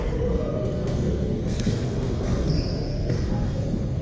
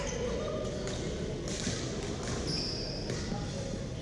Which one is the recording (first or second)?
second